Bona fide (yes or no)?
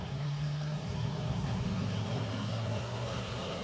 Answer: no